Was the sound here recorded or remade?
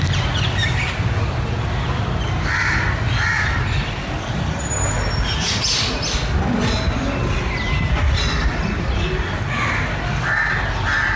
recorded